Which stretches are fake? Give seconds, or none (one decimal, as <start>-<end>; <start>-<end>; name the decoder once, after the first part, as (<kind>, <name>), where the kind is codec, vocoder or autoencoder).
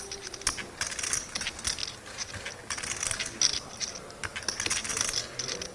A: none